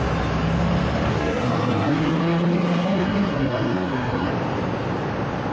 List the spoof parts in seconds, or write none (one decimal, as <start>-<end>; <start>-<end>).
1.1-4.3